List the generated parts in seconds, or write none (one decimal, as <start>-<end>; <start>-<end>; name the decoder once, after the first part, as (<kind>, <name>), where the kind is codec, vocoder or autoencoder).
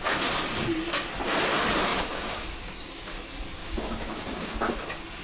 1.9-3.2 (codec, DAC); 3.6-4.7